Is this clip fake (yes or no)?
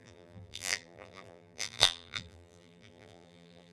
yes